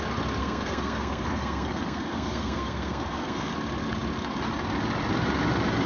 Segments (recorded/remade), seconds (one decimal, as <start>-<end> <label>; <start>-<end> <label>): 0.0-0.4 recorded; 0.4-3.5 remade; 3.5-5.9 recorded